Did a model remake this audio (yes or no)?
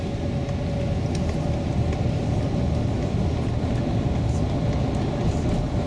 no